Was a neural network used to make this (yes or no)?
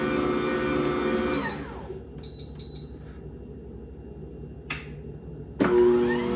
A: no